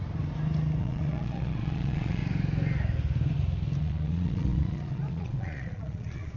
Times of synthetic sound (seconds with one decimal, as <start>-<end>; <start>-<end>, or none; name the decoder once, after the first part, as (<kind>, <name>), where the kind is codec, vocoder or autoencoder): 0.8-2.2 (vocoder, Vocos); 3.8-6.4